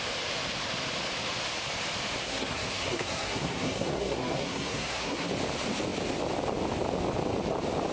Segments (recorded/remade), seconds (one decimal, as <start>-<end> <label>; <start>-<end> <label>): 0.0-2.2 recorded; 2.2-5.3 remade; 5.3-7.9 recorded